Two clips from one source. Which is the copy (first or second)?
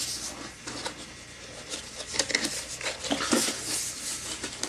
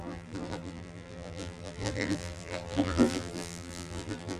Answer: second